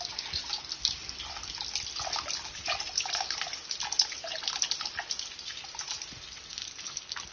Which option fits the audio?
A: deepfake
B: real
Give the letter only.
B